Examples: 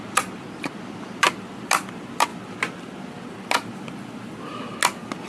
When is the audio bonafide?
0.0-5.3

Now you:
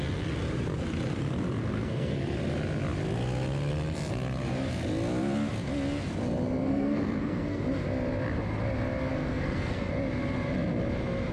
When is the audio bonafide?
0.0-1.6; 2.2-6.7; 7.6-9.1; 9.9-11.3

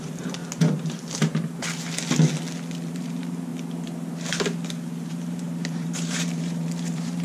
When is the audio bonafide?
0.4-2.9; 3.5-5.1

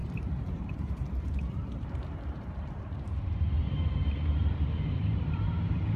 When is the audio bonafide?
none

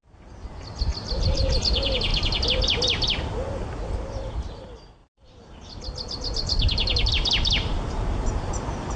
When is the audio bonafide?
0.0-5.0

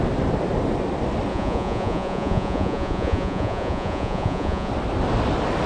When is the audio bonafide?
0.0-1.3; 4.7-5.7

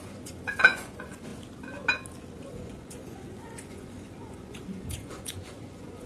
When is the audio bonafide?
1.3-2.5

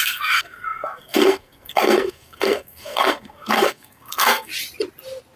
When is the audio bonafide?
4.5-5.4